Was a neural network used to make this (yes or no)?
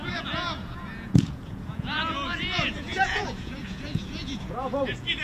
yes